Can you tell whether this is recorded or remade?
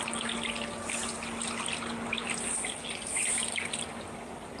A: recorded